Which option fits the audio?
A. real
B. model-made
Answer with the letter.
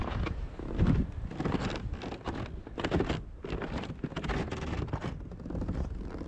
A